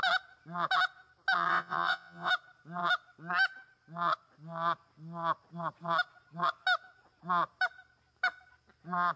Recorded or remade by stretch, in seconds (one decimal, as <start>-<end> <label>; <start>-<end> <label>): 0.0-1.5 recorded; 1.5-2.3 remade; 2.3-9.2 recorded